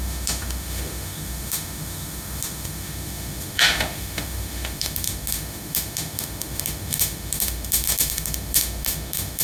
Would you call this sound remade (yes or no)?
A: yes